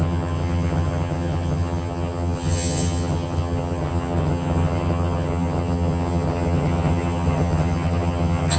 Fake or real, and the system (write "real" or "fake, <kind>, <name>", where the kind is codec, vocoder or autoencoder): fake, vocoder, HiFi-GAN